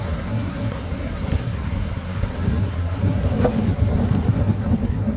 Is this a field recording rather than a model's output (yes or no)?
no